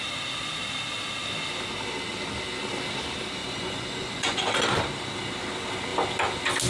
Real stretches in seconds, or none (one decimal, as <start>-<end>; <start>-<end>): 0.0-3.4; 4.5-6.7